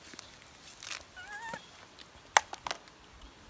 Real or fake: real